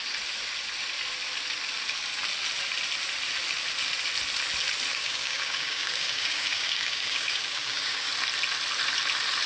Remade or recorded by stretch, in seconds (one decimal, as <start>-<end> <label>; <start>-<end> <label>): 0.0-4.9 recorded; 4.9-8.1 remade; 8.1-9.5 recorded